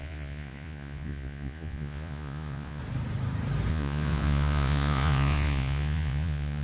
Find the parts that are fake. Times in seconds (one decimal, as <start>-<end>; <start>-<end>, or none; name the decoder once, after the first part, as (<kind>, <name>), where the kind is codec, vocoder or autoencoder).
0.0-2.8 (vocoder, Vocos); 3.7-6.6